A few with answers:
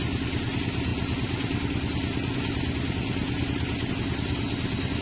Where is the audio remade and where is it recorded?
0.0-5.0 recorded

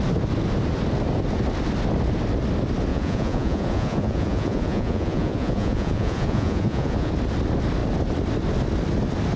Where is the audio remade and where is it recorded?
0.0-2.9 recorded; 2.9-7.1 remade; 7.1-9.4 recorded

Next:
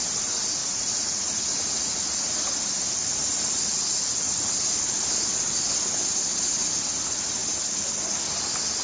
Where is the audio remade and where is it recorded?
0.0-0.6 recorded; 0.6-2.4 remade; 2.4-3.7 recorded; 3.7-4.5 remade; 4.5-8.8 recorded